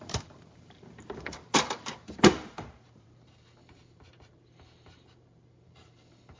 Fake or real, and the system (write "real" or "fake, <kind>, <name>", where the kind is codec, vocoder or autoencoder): fake, vocoder, BigVGAN v2